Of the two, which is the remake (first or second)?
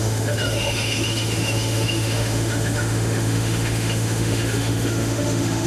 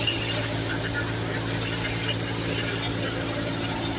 first